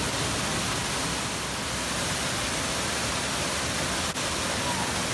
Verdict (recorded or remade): recorded